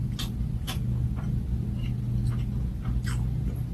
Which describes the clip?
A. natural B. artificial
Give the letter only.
A